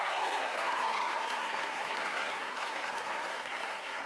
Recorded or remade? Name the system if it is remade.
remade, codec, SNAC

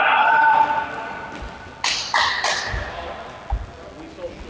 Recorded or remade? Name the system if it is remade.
recorded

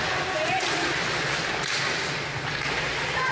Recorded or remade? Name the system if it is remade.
recorded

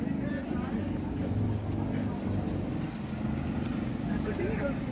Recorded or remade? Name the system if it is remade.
recorded